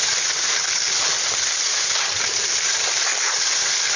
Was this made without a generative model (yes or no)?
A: yes